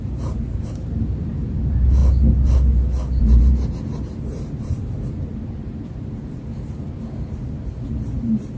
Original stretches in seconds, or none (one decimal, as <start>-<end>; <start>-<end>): 2.0-3.2